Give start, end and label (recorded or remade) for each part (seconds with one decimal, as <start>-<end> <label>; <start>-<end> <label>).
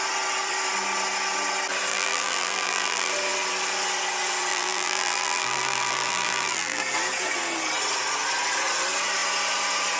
0.0-1.9 recorded; 1.9-3.1 remade; 3.1-4.5 recorded; 4.5-6.8 remade; 6.8-10.0 recorded